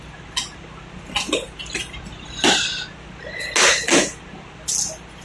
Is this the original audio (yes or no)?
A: yes